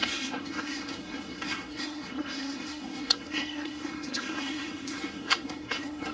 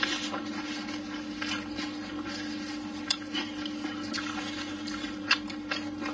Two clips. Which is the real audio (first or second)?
second